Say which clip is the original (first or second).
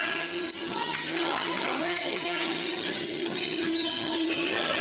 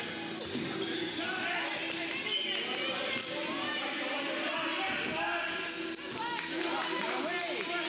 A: second